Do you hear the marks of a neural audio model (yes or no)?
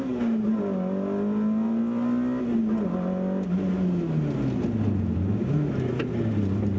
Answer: no